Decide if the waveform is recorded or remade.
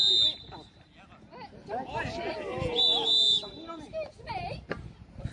recorded